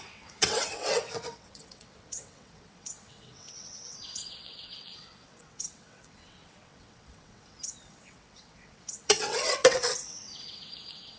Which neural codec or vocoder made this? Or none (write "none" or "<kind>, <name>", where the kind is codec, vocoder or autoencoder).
vocoder, WaveNeXt